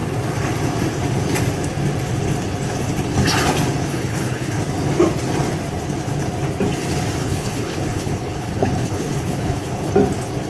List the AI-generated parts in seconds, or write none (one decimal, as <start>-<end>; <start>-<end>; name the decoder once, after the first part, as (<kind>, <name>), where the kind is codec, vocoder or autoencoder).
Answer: 3.8-4.6 (codec, HILCodec); 7.2-9.9